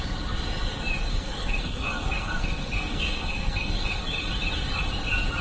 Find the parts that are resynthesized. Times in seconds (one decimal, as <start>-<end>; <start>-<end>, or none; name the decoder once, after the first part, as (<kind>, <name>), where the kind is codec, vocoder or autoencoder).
1.1-4.0 (codec, SNAC)